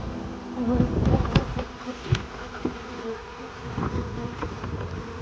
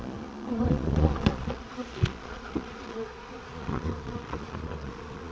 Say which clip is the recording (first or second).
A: first